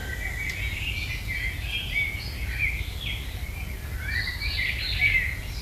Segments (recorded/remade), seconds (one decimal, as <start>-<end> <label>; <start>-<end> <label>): 0.0-5.6 recorded